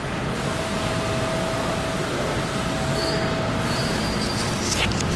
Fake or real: real